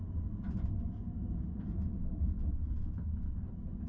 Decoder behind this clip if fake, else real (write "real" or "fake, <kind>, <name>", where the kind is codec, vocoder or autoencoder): real